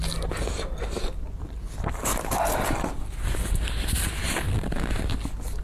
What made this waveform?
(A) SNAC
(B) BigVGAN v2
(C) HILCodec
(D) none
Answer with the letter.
D